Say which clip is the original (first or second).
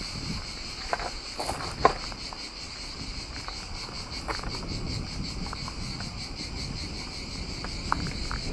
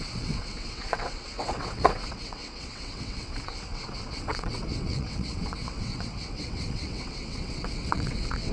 first